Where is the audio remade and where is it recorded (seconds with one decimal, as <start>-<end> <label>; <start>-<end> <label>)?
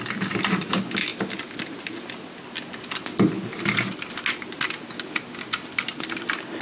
0.0-6.6 recorded